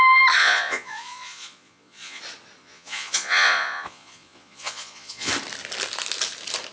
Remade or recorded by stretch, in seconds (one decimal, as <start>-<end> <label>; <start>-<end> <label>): 0.0-0.4 recorded; 0.4-2.2 remade; 2.2-2.6 recorded; 2.6-5.3 remade; 5.3-6.7 recorded